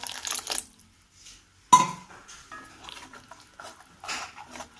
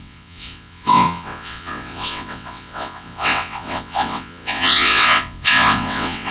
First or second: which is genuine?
first